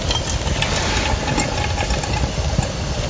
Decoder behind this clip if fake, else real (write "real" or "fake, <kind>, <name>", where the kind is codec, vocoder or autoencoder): real